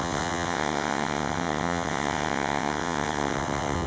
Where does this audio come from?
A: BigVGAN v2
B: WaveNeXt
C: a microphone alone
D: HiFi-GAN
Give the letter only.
B